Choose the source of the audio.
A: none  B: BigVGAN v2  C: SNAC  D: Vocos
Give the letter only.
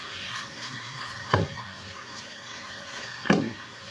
C